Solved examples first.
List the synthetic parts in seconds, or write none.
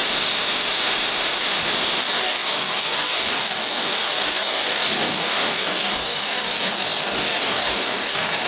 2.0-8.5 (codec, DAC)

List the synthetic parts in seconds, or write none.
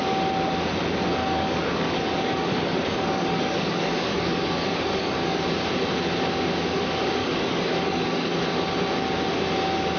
1.2-5.4 (codec, DAC); 7.2-8.3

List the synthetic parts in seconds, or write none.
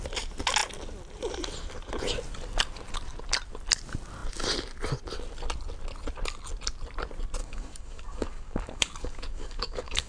7.4-10.1 (codec, DAC)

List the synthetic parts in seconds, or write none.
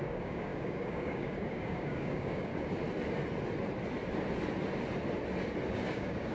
0.0-2.5 (codec, DAC); 5.7-6.3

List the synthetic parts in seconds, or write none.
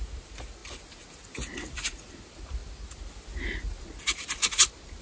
none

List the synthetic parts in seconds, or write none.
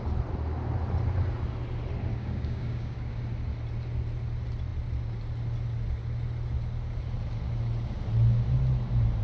2.1-3.2 (codec, DAC)